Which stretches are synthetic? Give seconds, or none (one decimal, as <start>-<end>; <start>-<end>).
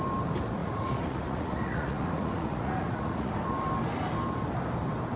0.6-3.3